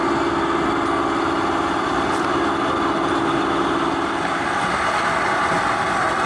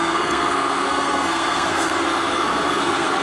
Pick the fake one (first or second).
second